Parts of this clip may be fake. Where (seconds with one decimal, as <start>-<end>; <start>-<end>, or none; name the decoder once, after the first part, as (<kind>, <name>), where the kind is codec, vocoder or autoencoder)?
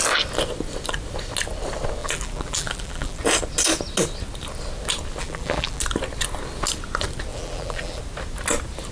2.0-3.2 (vocoder, BigVGAN v2); 5.2-5.8; 7.3-8.0